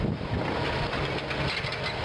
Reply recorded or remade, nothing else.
recorded